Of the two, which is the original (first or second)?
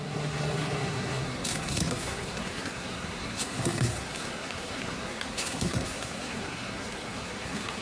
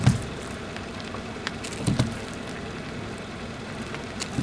second